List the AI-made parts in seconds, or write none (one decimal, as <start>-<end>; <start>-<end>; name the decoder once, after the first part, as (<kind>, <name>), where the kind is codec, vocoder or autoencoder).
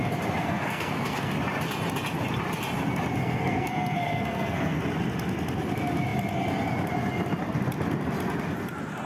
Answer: 0.4-1.3 (codec, SNAC); 3.2-4.8